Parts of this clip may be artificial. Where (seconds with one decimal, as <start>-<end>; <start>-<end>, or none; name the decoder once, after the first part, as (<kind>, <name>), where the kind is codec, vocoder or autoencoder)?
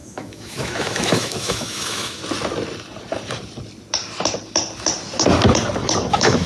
0.0-2.2 (autoencoder, DAC-VAE); 6.1-6.5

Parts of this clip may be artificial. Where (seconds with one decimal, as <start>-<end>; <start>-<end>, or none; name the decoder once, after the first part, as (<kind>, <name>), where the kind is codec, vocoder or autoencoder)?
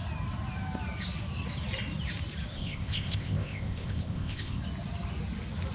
2.5-4.6 (codec, ZipCodec)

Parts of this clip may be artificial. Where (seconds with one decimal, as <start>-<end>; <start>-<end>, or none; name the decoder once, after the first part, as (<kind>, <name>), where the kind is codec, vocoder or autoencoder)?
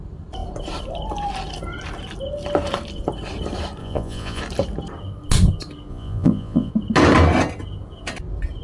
3.8-4.4 (vocoder, Vocos); 5.9-6.7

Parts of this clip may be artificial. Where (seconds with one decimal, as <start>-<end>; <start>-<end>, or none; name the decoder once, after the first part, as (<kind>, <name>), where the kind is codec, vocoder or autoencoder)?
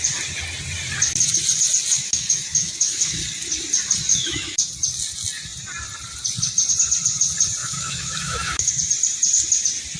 2.0-3.2 (autoencoder, DAC-VAE); 4.1-4.7; 7.6-8.7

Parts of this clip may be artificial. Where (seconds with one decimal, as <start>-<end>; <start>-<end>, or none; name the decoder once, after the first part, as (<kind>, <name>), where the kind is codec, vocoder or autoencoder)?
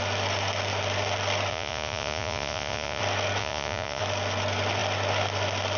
1.5-3.0 (vocoder, Vocos); 3.4-4.0